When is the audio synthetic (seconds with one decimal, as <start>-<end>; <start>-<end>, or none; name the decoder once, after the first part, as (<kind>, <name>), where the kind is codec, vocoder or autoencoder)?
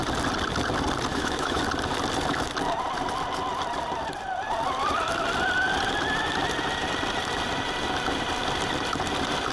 1.1-1.6 (autoencoder, DAC-VAE)